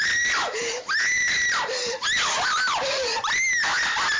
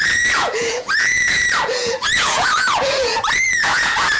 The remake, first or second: second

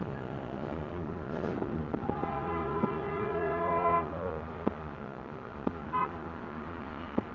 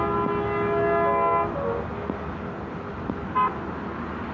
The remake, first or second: first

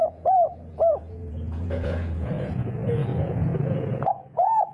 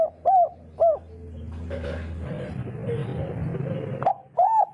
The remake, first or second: first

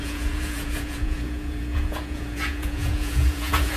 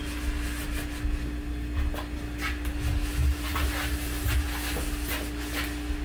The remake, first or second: first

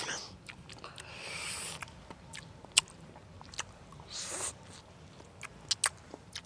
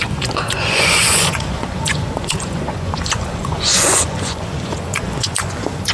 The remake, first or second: second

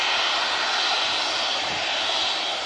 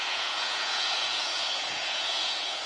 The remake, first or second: second